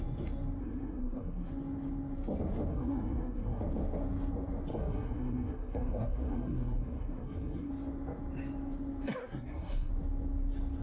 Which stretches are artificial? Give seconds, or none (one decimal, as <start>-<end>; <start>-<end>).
0.6-1.5; 2.7-3.6; 4.7-7.7; 9.2-9.9